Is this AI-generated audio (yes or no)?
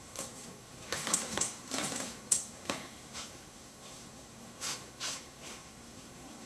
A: yes